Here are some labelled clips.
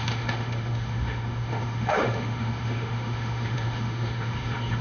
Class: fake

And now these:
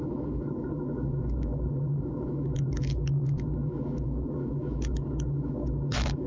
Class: fake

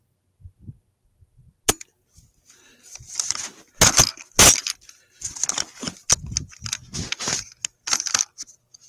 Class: real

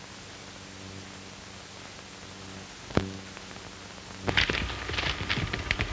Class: real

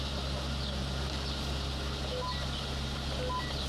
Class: real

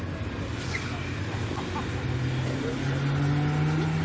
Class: real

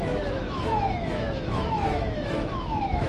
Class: fake